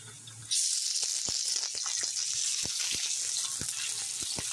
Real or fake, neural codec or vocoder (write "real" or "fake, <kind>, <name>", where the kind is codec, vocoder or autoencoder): real